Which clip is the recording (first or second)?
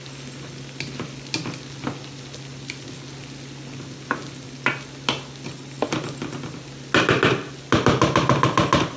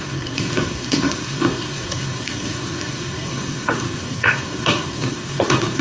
first